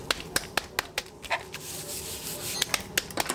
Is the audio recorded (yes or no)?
yes